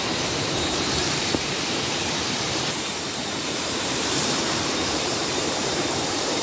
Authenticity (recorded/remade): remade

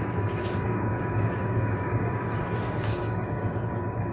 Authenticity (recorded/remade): remade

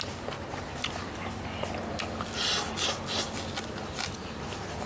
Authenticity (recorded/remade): recorded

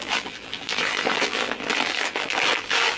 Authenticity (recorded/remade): remade